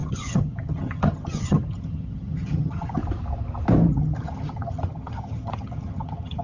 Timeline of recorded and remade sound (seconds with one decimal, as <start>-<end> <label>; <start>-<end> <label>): 0.0-3.0 remade; 3.0-3.9 recorded; 3.9-6.4 remade